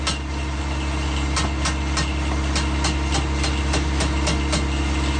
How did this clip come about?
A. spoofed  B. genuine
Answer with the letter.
B